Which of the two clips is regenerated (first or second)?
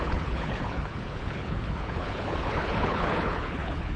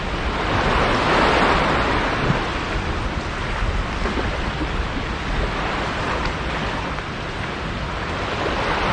first